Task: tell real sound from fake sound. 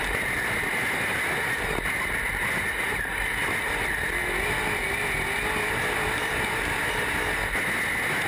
real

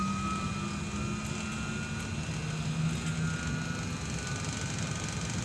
real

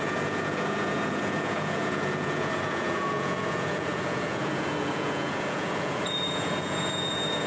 fake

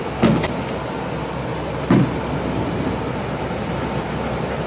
real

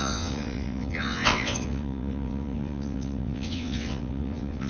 fake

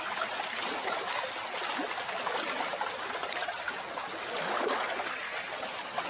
real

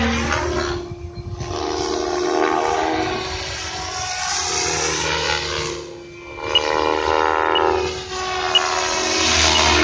real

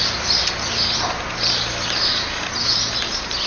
real